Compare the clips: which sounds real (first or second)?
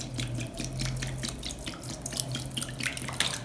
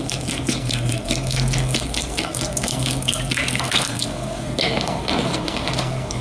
first